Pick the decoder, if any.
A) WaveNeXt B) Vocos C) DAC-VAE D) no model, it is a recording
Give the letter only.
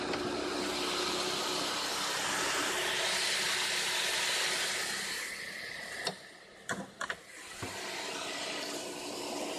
D